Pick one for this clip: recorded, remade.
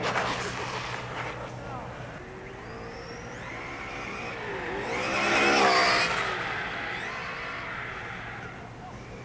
recorded